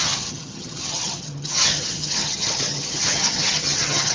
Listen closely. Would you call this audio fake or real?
fake